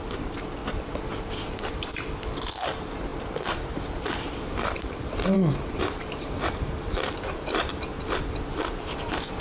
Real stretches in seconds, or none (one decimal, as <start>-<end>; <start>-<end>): 0.6-1.1; 1.9-2.7